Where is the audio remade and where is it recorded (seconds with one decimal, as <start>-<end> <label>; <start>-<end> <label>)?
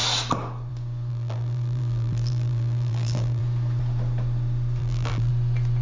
0.0-1.1 recorded; 1.1-3.4 remade; 3.4-4.8 recorded; 4.8-5.3 remade; 5.3-5.8 recorded